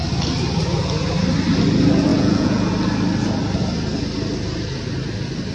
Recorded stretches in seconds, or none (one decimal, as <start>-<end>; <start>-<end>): 0.0-2.1; 2.7-5.5